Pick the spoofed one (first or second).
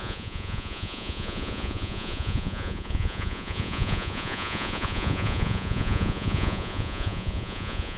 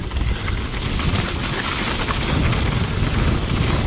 first